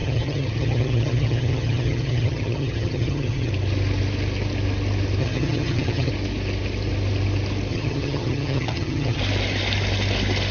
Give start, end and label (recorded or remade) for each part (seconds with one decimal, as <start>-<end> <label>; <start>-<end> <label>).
0.0-3.5 remade; 3.5-5.2 recorded; 5.2-6.1 remade; 6.1-7.7 recorded; 7.7-9.2 remade; 9.2-10.5 recorded